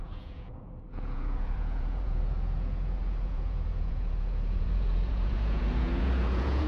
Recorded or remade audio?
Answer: remade